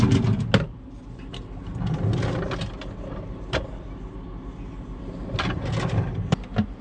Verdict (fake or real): real